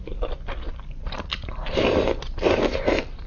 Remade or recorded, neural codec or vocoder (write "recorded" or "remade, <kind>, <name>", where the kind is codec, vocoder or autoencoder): recorded